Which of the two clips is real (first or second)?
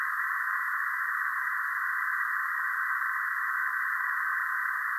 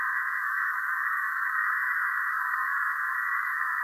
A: first